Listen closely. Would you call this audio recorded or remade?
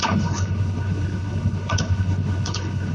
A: remade